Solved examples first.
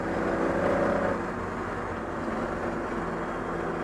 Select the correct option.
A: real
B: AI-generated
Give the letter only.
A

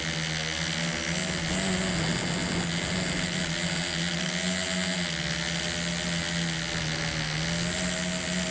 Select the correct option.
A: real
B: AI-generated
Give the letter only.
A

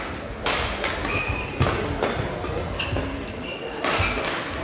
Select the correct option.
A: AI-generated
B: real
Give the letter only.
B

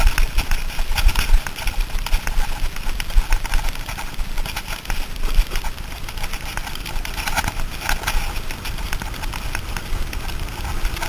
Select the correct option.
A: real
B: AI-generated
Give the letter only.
A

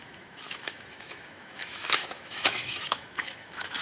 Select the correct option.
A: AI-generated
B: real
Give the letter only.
A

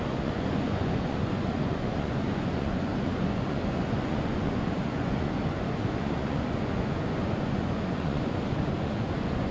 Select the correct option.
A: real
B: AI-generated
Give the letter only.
B